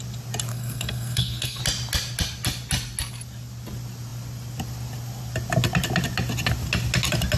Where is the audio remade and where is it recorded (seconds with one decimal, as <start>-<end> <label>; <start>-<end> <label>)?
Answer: 0.0-0.5 recorded; 0.5-1.6 remade; 1.6-7.4 recorded

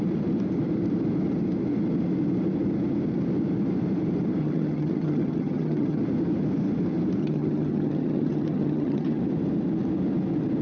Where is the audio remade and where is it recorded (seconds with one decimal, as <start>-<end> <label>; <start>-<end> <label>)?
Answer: 0.0-4.4 recorded; 4.4-6.0 remade; 6.0-7.2 recorded; 7.2-9.2 remade; 9.2-10.6 recorded

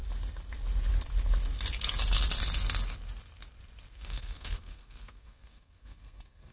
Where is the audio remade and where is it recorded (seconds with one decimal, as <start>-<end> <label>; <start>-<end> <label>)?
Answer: 0.0-3.9 recorded; 3.9-6.5 remade

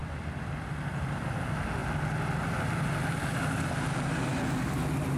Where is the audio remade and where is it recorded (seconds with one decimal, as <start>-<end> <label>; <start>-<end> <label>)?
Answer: 0.0-0.8 remade; 0.8-5.2 recorded

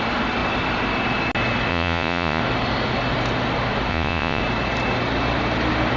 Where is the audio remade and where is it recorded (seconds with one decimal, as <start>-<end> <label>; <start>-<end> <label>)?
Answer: 0.0-1.7 recorded; 1.7-2.4 remade; 2.4-3.9 recorded; 3.9-4.4 remade; 4.4-6.0 recorded